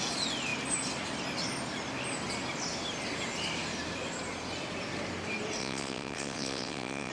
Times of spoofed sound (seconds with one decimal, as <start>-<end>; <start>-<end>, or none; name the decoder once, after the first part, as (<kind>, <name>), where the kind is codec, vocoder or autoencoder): 5.6-7.1 (vocoder, WaveNeXt)